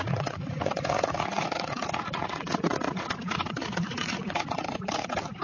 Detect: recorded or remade remade